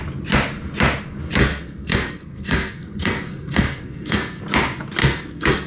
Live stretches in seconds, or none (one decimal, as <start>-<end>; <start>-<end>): 0.0-1.4; 4.4-5.0